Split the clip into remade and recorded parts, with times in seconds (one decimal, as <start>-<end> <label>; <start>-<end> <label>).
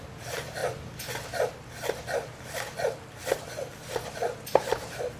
0.0-5.2 remade